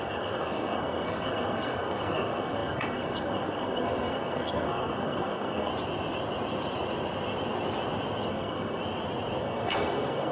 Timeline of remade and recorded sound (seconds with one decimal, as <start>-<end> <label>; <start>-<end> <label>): 0.0-5.7 remade; 5.7-8.3 recorded; 8.3-8.8 remade; 8.8-9.4 recorded; 9.4-10.3 remade